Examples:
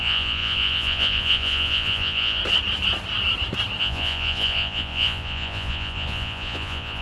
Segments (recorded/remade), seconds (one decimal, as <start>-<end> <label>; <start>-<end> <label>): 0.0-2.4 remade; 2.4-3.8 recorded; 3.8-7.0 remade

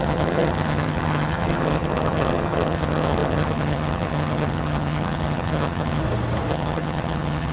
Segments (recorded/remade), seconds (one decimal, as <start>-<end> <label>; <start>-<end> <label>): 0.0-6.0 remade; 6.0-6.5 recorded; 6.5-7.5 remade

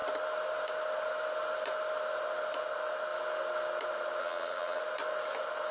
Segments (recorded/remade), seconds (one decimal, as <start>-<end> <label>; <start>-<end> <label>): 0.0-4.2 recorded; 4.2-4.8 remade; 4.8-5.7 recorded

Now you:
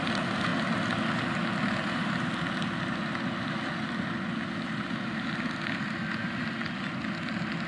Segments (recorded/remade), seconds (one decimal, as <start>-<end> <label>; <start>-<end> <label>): 0.0-7.7 recorded

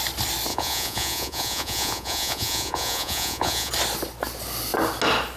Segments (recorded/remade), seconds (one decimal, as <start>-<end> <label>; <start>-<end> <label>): 0.0-0.5 recorded; 0.5-3.7 remade; 3.7-5.4 recorded

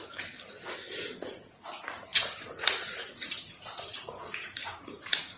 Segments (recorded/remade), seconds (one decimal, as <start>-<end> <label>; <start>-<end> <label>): 0.0-1.2 recorded; 1.2-5.4 remade

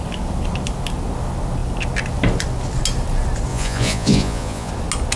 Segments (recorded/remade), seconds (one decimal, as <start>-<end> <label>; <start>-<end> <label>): 0.0-3.5 recorded; 3.5-4.7 remade; 4.7-5.2 recorded